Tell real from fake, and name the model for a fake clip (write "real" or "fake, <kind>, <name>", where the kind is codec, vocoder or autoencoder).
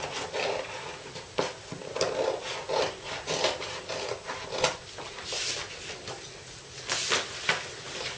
real